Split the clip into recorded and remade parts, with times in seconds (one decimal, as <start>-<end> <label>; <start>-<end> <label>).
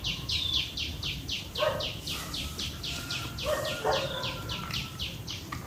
0.0-0.9 remade; 0.9-1.7 recorded; 1.7-5.7 remade